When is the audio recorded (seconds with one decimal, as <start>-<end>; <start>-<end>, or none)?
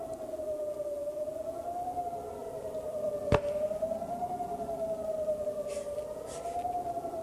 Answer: 0.0-2.4; 3.1-7.2